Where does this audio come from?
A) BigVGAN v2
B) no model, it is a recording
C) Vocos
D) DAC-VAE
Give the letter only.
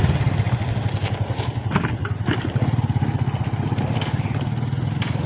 B